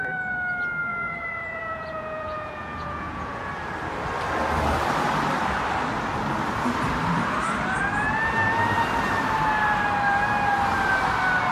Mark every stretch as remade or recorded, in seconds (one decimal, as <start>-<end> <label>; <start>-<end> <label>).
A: 0.0-0.9 recorded; 0.9-3.5 remade; 3.5-11.5 recorded